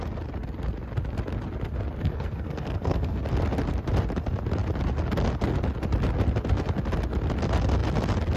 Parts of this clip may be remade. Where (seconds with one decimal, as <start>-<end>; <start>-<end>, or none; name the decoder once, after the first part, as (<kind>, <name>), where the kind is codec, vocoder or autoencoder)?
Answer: 2.0-3.2 (codec, SNAC)